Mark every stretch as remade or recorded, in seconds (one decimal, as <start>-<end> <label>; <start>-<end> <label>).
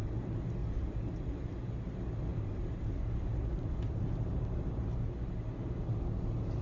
0.0-0.6 recorded; 0.6-1.2 remade; 1.2-2.3 recorded; 2.3-4.7 remade; 4.7-6.6 recorded